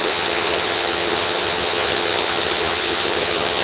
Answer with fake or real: fake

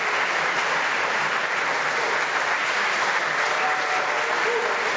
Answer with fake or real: real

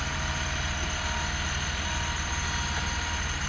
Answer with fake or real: real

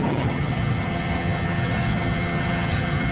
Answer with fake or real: fake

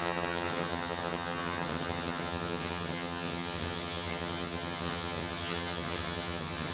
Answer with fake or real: fake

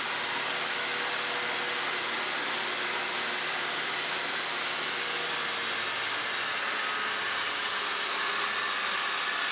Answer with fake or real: real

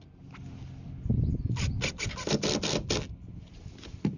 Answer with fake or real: real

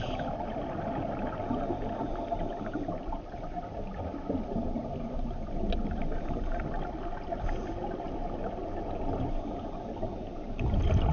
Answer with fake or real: real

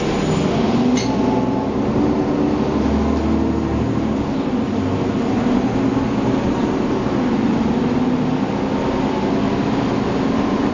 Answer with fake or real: real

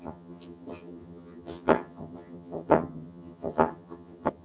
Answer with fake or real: fake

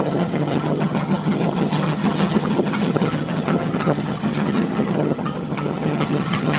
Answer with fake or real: fake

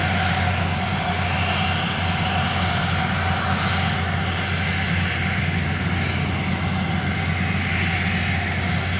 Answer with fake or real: real